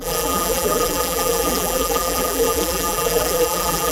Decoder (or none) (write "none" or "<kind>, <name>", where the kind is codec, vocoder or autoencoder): vocoder, BigVGAN v2